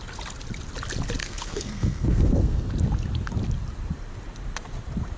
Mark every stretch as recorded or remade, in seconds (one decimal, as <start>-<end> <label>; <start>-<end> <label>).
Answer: 0.0-1.2 recorded; 1.2-2.7 remade; 2.7-5.2 recorded